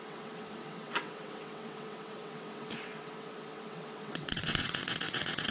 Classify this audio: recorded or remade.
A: remade